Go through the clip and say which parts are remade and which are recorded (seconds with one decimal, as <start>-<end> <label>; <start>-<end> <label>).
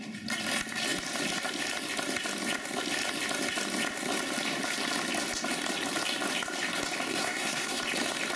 0.0-7.1 recorded; 7.1-7.8 remade; 7.8-8.4 recorded